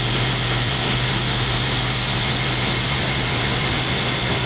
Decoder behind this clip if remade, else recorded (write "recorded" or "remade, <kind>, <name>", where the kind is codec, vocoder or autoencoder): recorded